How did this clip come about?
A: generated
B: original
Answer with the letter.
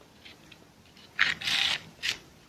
B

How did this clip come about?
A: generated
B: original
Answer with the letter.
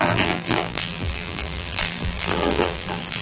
A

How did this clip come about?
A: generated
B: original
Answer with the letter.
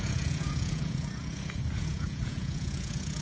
A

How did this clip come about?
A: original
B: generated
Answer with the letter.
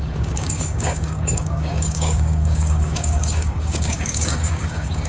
B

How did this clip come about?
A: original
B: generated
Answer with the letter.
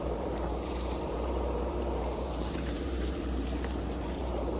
B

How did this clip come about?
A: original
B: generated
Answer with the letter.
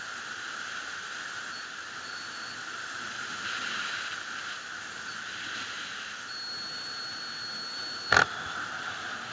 A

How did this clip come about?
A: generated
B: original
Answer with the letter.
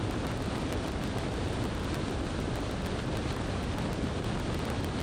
B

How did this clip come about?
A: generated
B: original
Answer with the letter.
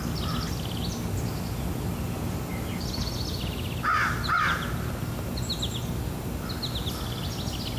B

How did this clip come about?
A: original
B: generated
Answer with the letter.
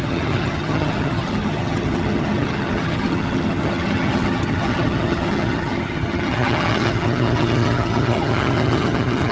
B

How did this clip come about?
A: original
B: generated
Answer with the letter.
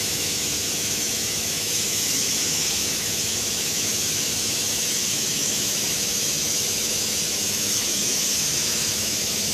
B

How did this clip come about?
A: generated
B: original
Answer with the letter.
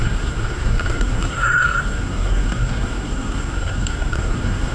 A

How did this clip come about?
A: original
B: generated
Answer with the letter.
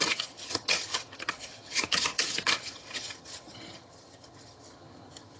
B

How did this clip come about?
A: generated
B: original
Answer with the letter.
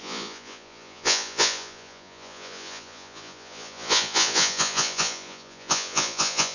A